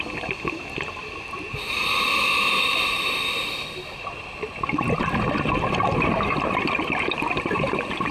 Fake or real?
real